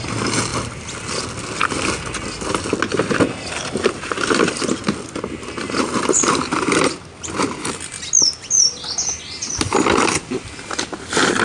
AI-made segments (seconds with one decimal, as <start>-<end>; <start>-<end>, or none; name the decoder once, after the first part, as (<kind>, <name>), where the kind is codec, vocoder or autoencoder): none